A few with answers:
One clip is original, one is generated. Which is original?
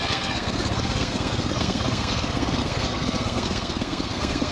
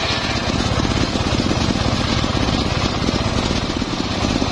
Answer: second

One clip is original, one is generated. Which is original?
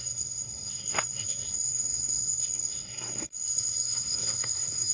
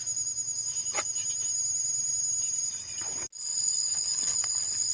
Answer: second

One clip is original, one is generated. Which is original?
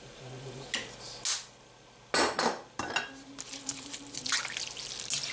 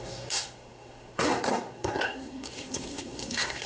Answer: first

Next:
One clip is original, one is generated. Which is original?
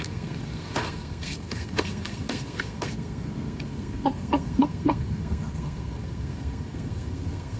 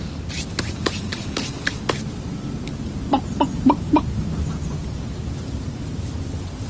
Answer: second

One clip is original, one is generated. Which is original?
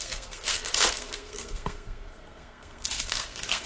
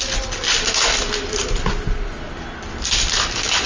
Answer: second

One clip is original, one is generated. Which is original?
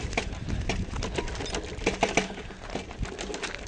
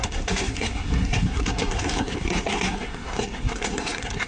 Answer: first